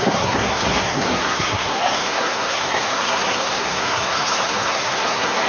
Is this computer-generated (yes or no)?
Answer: yes